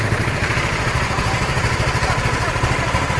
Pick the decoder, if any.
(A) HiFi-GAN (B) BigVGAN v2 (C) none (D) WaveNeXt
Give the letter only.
B